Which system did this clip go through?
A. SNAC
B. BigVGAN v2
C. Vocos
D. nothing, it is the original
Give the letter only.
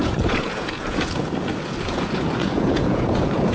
C